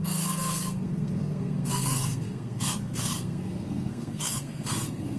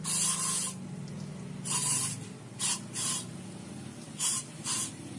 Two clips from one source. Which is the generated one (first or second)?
first